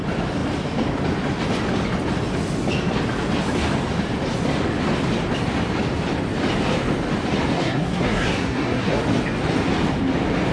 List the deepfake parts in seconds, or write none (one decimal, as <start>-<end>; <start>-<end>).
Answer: 7.5-9.0